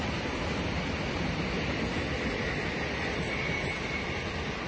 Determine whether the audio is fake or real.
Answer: real